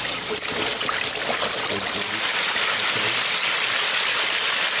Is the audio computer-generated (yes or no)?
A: no